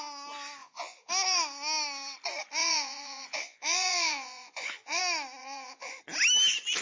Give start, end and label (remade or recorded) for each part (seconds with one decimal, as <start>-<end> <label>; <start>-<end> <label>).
0.0-0.6 recorded; 0.6-1.1 remade; 1.1-2.6 recorded; 2.6-5.0 remade; 5.0-5.4 recorded; 5.4-6.0 remade; 6.0-6.8 recorded